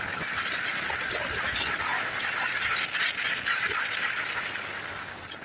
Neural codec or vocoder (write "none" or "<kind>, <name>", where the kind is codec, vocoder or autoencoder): vocoder, BigVGAN v2